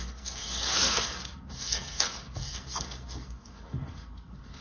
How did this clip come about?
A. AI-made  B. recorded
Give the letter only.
A